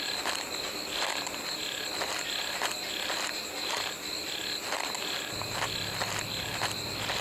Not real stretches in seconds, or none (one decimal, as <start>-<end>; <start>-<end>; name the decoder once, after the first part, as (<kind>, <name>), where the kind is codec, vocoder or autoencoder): none